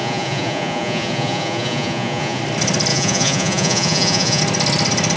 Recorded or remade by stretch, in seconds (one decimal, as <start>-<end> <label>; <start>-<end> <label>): 0.0-2.4 remade; 2.4-2.9 recorded; 2.9-4.4 remade; 4.4-5.2 recorded